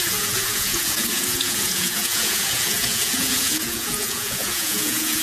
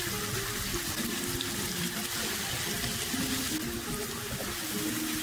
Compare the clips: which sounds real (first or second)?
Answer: second